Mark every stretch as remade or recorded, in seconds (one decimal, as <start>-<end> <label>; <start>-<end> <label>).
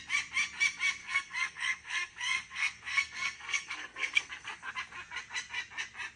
0.0-1.0 recorded; 1.0-4.7 remade; 4.7-6.2 recorded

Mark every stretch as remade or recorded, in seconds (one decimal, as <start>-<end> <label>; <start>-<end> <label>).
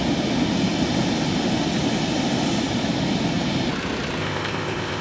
0.0-4.2 recorded; 4.2-5.0 remade